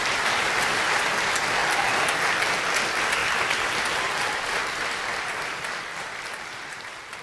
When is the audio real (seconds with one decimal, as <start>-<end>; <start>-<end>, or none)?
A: 1.6-2.3